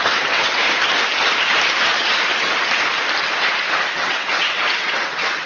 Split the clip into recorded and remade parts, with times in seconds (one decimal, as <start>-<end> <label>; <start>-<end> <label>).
0.0-0.6 remade; 0.6-3.9 recorded; 3.9-5.5 remade